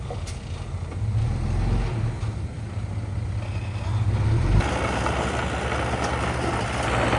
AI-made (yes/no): no